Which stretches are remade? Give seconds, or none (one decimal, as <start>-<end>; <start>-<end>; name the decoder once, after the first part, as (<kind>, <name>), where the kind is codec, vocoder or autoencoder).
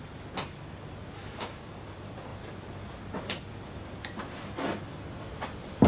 1.2-1.7 (codec, DAC)